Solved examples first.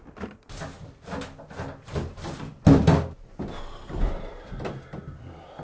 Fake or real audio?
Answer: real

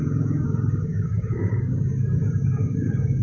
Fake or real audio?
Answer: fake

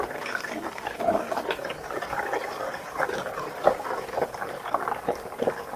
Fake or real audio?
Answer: fake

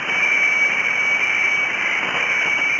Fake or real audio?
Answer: real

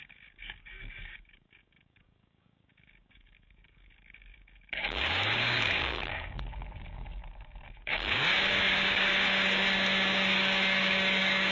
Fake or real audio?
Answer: fake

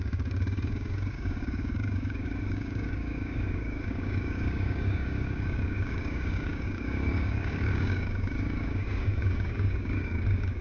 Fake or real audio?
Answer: fake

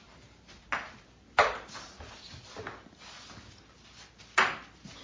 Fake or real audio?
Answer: real